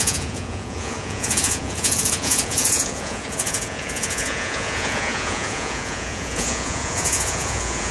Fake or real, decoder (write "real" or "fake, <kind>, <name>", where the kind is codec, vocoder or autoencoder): fake, vocoder, Vocos